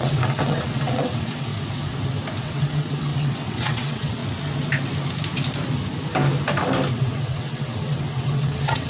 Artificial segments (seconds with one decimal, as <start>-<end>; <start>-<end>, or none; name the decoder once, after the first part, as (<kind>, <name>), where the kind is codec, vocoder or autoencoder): 0.0-1.5 (vocoder, WaveNeXt); 2.4-4.2; 6.9-8.9